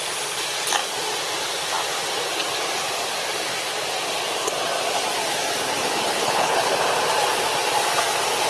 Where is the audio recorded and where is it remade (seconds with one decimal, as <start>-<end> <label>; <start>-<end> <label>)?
0.0-5.8 recorded; 5.8-6.7 remade; 6.7-8.5 recorded